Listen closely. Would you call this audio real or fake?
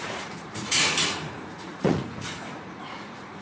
fake